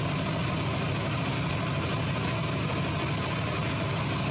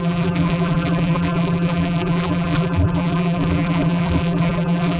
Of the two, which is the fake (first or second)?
second